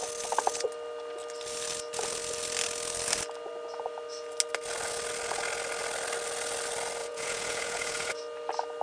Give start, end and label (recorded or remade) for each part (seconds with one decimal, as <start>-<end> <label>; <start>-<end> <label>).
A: 0.0-7.0 recorded; 7.0-8.2 remade; 8.2-8.8 recorded